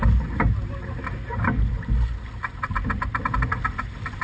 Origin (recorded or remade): recorded